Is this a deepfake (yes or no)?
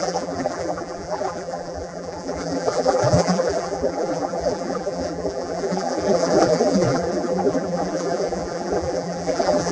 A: yes